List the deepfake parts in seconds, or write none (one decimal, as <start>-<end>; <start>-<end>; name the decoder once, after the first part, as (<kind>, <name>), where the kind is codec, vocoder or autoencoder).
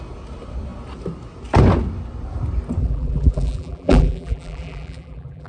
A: 2.8-5.5 (vocoder, BigVGAN v2)